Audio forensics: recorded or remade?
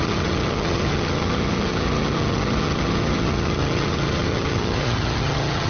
remade